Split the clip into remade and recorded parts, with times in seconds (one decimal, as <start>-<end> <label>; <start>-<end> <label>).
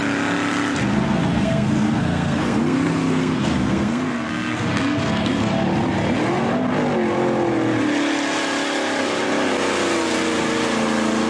0.0-0.9 recorded; 0.9-5.5 remade; 5.5-11.3 recorded